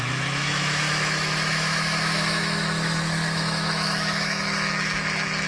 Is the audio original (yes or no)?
no